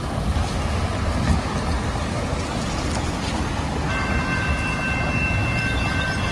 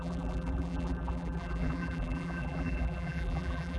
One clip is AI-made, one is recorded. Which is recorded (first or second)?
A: first